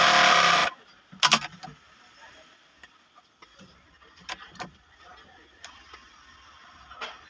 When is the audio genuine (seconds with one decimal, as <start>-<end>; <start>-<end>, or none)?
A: 0.0-7.3